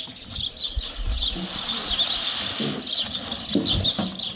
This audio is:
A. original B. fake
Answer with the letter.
A